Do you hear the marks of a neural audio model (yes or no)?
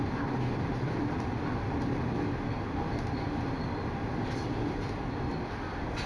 no